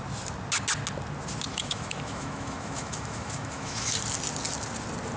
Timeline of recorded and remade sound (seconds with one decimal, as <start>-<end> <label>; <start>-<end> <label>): 0.0-1.5 recorded; 1.5-3.9 remade; 3.9-5.2 recorded